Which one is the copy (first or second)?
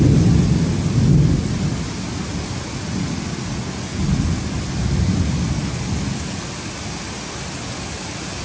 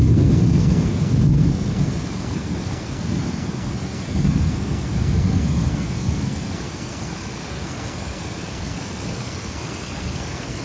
second